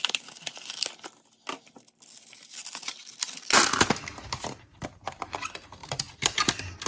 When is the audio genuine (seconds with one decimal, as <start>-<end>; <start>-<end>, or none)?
0.0-6.9